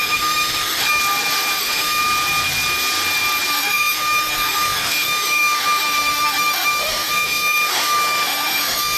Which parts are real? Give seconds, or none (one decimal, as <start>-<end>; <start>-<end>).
1.0-1.6; 2.0-3.5